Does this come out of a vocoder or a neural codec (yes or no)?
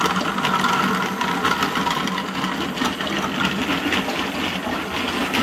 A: no